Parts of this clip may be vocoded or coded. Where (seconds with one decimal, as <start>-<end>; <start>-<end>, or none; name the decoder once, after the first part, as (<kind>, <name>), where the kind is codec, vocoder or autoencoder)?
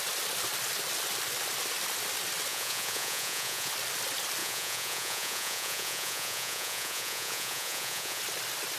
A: 2.5-3.7 (vocoder, Vocos); 4.4-8.2